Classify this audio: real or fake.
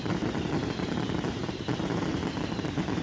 fake